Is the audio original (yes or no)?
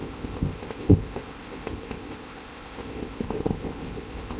no